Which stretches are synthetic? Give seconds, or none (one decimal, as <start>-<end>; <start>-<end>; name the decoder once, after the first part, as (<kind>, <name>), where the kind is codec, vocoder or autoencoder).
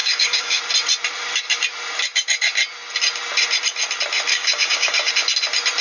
0.0-0.6 (codec, DAC); 4.3-5.1